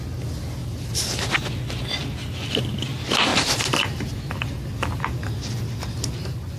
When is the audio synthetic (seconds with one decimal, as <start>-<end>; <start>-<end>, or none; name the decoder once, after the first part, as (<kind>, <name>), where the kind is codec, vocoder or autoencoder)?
0.6-1.3 (vocoder, BigVGAN v2); 3.3-6.6